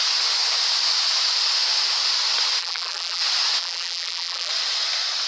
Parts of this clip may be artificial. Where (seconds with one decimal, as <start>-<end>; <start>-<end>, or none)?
2.6-3.2; 3.6-4.5